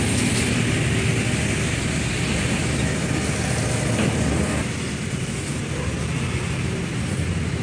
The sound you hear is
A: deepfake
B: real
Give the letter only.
B